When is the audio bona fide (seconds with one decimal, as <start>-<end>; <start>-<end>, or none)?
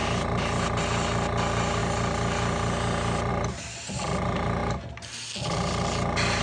0.8-6.4